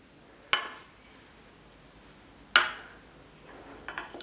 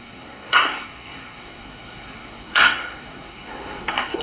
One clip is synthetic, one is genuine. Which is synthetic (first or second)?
second